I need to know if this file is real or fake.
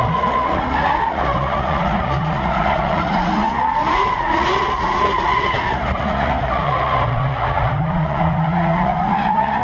fake